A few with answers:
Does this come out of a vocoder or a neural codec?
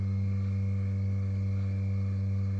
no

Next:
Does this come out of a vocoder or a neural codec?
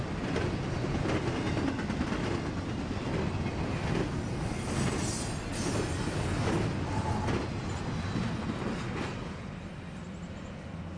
no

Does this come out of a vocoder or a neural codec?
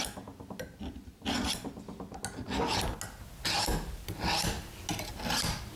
no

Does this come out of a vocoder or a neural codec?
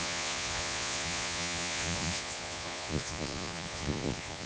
yes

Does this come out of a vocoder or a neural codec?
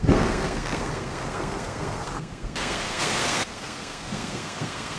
yes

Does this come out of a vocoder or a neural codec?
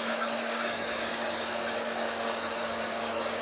yes